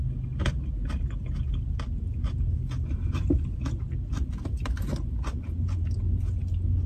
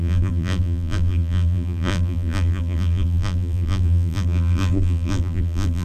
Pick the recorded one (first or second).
first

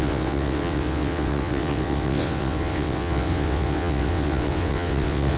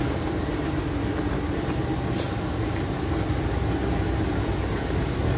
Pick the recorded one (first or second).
second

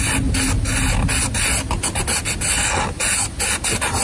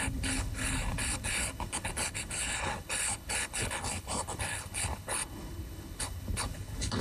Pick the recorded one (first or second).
first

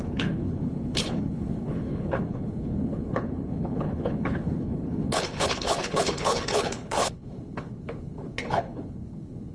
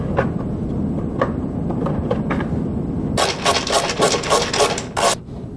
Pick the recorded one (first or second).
second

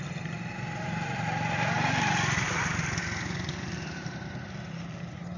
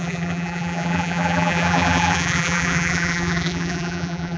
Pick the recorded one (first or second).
first